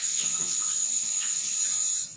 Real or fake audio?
fake